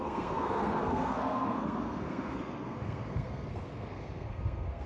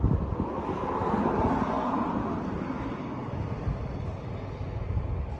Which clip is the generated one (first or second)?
first